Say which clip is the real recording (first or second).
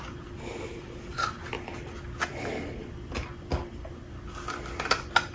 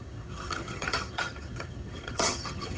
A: first